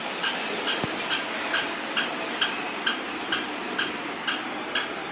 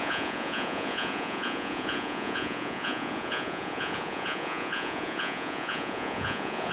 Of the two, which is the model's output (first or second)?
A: second